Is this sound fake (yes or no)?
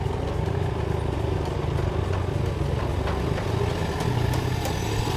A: no